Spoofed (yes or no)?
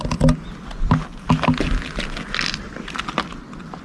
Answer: no